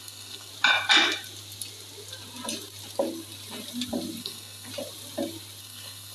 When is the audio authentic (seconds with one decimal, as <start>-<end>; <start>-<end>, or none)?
0.5-4.2; 4.7-5.6